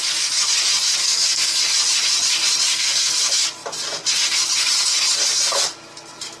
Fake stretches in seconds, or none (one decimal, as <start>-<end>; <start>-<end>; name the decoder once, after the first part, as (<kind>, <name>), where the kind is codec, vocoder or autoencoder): 1.0-1.6 (codec, SNAC); 2.7-3.2